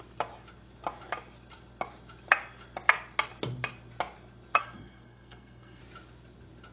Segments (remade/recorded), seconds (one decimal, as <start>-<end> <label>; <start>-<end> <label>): 0.0-4.6 recorded; 4.6-5.8 remade; 5.8-6.7 recorded